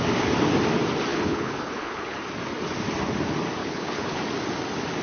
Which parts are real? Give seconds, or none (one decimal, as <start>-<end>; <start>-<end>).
0.0-1.1; 2.2-3.6; 4.2-5.0